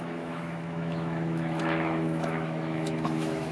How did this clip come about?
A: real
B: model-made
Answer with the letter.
B